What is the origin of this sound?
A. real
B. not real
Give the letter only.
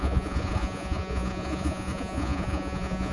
B